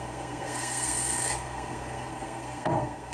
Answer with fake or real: fake